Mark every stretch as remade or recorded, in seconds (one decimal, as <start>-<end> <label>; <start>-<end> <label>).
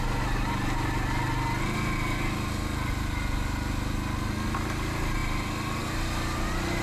0.0-6.8 recorded